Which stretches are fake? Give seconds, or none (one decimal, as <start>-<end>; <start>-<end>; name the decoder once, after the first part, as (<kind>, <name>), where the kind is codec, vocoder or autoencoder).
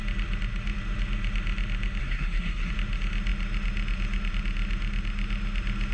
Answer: 2.0-2.7 (codec, SNAC)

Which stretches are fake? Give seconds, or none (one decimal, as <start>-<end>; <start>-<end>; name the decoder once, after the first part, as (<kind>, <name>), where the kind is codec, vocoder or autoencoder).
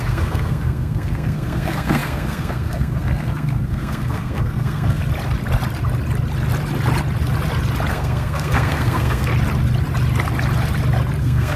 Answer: 0.0-5.0 (codec, SNAC); 7.9-9.3; 11.2-11.6